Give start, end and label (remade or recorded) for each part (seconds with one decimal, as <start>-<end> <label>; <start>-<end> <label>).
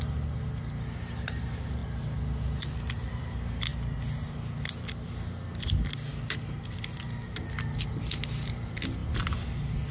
0.0-9.9 recorded